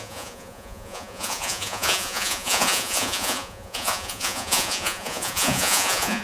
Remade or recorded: remade